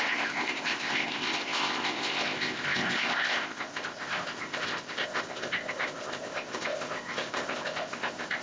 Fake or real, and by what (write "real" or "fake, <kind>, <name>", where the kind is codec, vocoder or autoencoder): fake, codec, ZipCodec